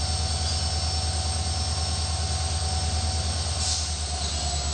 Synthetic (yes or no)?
no